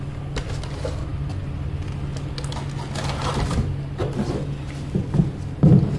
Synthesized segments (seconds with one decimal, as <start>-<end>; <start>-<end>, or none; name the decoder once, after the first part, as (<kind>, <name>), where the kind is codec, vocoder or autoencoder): none

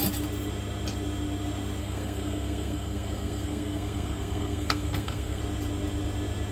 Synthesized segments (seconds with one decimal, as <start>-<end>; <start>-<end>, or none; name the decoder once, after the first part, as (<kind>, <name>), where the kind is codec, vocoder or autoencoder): 1.8-5.4 (codec, SNAC)

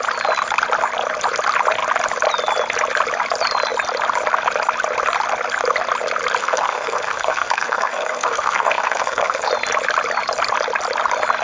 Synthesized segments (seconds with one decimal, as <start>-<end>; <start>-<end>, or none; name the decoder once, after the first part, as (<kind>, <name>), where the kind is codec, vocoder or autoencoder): 6.4-9.5 (codec, SNAC)

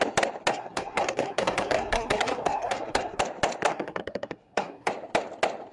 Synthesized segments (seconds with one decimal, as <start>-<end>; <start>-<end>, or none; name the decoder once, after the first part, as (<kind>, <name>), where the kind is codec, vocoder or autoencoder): 0.5-3.2 (codec, SNAC); 3.7-4.9

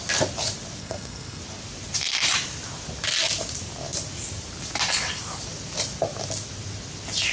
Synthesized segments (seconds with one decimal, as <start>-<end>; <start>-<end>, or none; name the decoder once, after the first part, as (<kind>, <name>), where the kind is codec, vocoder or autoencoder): 0.8-1.4 (codec, SNAC)